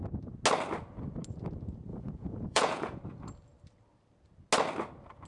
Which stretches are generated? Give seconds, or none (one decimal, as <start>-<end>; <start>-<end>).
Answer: 1.9-3.0